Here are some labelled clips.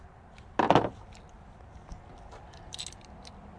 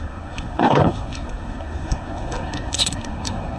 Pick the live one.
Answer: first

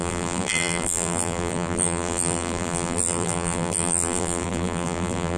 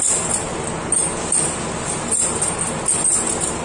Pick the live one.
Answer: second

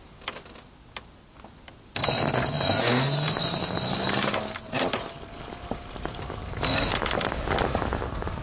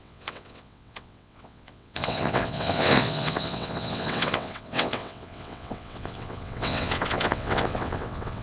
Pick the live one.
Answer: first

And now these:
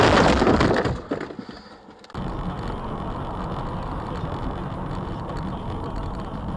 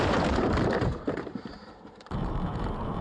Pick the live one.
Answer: first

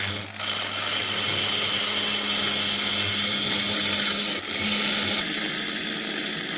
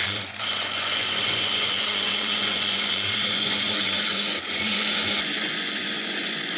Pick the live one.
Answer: first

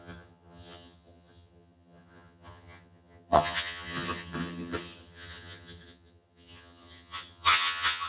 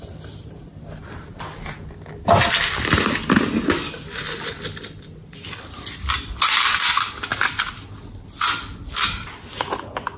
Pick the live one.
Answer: second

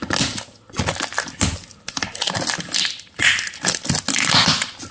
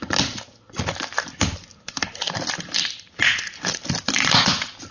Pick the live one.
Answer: first